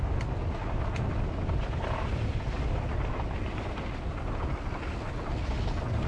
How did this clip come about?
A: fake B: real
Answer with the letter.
B